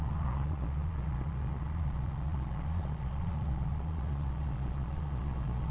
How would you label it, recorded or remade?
remade